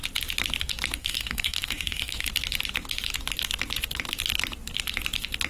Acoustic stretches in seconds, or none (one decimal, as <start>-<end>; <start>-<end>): 0.0-1.0; 2.3-5.5